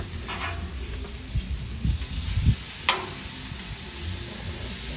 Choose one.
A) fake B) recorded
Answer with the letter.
B